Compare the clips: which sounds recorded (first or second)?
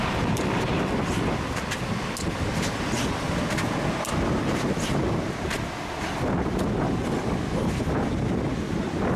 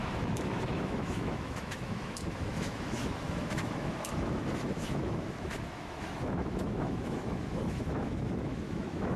first